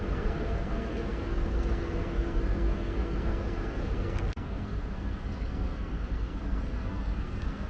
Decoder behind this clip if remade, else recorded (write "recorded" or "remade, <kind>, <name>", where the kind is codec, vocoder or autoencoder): remade, codec, SNAC